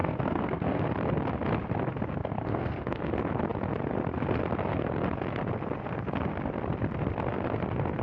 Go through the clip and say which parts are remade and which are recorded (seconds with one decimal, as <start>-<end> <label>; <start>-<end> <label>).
0.0-0.8 remade; 0.8-2.2 recorded; 2.2-3.1 remade; 3.1-8.0 recorded